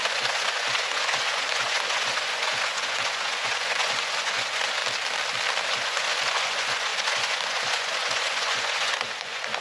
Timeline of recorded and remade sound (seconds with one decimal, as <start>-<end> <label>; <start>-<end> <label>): 0.0-4.8 remade; 4.8-5.7 recorded; 5.7-9.6 remade